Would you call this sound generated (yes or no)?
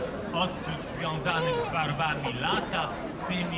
no